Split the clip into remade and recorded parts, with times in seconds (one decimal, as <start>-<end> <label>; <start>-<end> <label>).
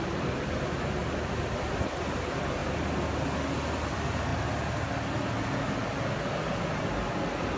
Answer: 0.0-1.0 remade; 1.0-2.1 recorded; 2.1-2.6 remade; 2.6-3.7 recorded; 3.7-4.3 remade; 4.3-6.6 recorded; 6.6-7.6 remade